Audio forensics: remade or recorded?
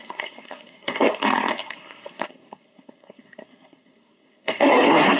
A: remade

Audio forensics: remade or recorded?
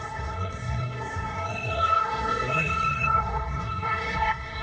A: remade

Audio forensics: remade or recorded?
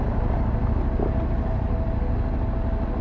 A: recorded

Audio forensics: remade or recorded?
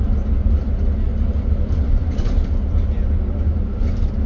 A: recorded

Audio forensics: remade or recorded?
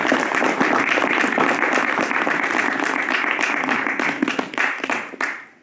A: recorded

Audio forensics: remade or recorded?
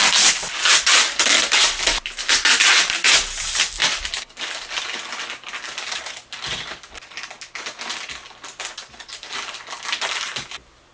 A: recorded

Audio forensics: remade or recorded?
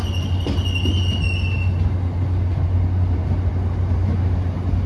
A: recorded